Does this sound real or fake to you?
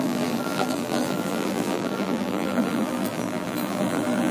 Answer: fake